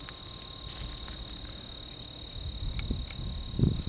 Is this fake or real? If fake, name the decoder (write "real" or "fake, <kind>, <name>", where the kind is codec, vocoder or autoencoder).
real